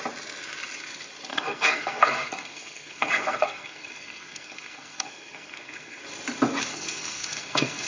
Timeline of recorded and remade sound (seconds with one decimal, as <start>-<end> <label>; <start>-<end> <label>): 0.0-1.3 recorded; 1.3-6.0 remade; 6.0-6.7 recorded; 6.7-7.9 remade